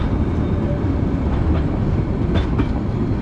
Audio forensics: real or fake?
real